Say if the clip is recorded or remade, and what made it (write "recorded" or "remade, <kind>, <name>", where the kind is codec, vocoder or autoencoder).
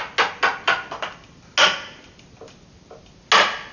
recorded